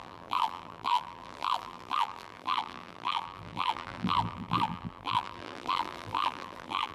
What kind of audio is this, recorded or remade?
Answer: remade